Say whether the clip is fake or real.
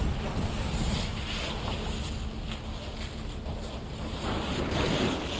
real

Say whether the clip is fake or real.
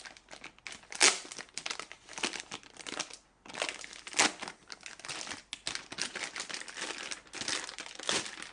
real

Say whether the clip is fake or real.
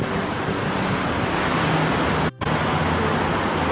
real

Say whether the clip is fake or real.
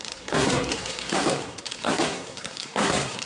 fake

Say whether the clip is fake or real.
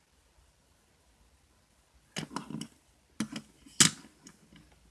real